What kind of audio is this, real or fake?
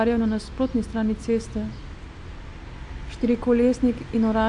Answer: real